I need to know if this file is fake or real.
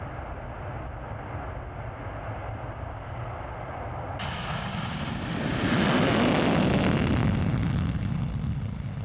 real